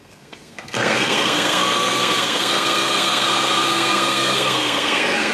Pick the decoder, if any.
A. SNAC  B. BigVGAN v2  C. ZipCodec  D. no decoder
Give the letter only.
A